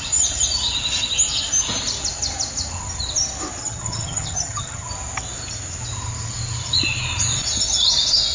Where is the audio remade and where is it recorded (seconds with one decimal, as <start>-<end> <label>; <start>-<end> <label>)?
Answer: 0.0-3.6 recorded; 3.6-4.9 remade; 4.9-8.3 recorded